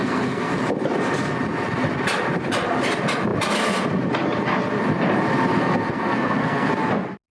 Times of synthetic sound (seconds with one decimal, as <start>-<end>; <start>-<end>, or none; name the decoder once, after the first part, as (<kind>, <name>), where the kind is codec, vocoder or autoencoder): 0.0-0.5 (codec, SNAC); 5.5-6.7